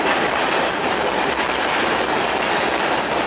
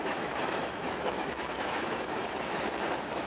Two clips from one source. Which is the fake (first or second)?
second